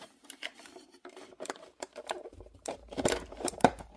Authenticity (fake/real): fake